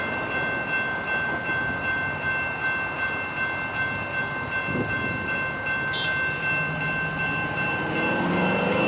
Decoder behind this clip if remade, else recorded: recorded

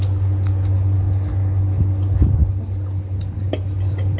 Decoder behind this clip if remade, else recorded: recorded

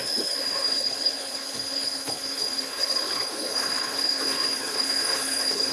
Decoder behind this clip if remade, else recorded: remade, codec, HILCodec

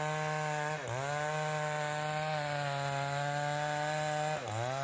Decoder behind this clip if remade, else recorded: recorded